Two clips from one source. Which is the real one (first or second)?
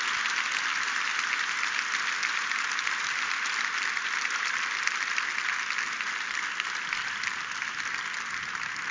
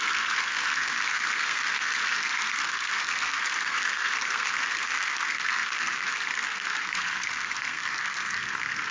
first